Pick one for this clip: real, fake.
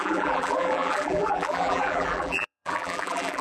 fake